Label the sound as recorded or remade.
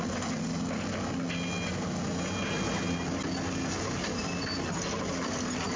recorded